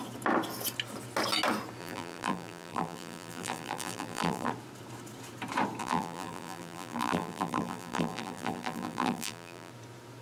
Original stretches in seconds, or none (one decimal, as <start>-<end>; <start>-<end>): 0.0-1.8; 4.5-5.8; 9.7-10.2